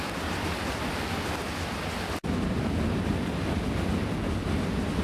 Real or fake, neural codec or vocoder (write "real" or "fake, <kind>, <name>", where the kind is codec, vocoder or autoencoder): real